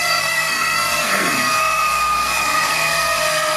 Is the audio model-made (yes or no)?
yes